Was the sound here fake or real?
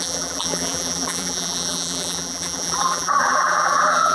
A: fake